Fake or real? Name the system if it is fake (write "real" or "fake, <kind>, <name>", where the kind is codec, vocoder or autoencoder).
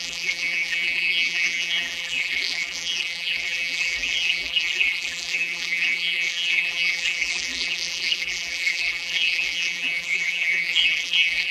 fake, vocoder, BigVGAN v2